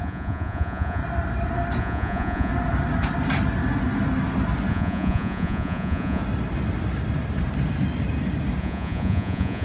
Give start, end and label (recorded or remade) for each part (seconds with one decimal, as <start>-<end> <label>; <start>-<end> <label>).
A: 0.0-1.0 remade; 1.0-1.8 recorded; 1.8-2.5 remade; 2.5-4.7 recorded; 4.7-6.2 remade; 6.2-8.6 recorded; 8.6-9.6 remade